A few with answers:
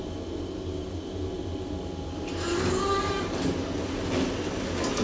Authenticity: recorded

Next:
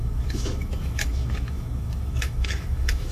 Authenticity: remade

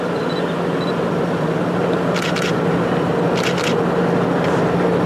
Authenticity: recorded